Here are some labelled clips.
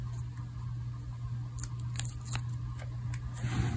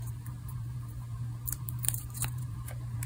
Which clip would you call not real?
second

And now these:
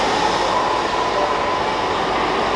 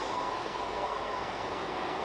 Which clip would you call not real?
second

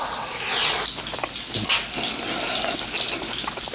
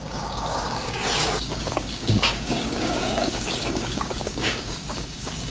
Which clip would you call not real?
second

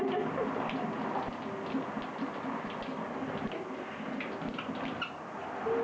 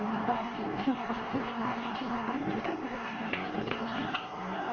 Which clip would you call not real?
second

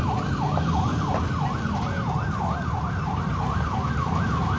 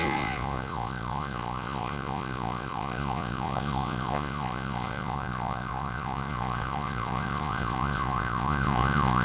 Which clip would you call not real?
second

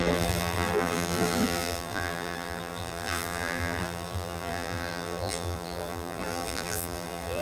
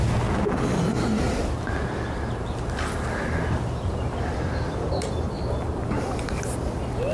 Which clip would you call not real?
first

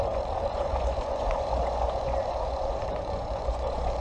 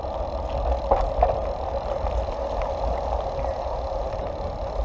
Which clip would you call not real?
first